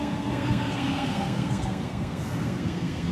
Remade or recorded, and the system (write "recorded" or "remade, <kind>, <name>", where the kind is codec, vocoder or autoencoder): remade, codec, SNAC